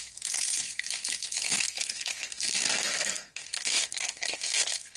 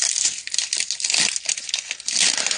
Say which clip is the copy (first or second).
first